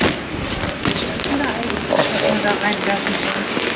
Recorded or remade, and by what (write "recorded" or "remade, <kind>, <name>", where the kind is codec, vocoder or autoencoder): recorded